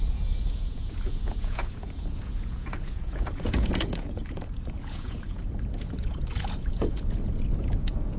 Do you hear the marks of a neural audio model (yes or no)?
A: yes